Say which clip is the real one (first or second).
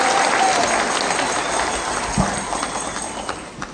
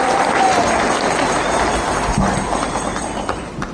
second